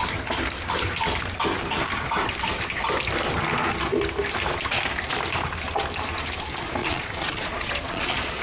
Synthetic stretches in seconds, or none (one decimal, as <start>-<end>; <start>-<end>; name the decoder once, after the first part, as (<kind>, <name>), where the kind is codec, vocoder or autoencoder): 6.8-8.4 (vocoder, Vocos)